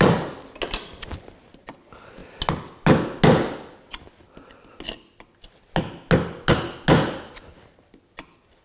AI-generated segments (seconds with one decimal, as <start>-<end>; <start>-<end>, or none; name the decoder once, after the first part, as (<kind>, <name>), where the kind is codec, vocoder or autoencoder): none